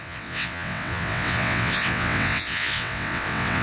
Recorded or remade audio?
remade